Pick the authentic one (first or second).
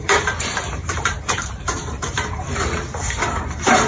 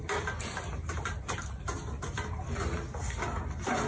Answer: second